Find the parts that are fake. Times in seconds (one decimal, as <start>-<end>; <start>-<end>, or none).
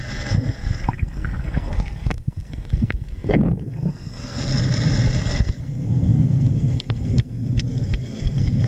0.0-4.5; 5.2-8.7